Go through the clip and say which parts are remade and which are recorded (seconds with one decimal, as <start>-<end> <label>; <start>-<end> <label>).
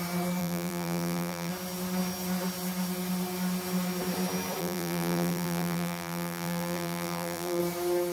0.0-0.4 recorded; 0.4-1.5 remade; 1.5-4.6 recorded; 4.6-7.6 remade; 7.6-8.1 recorded